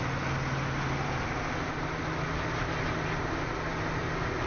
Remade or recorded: recorded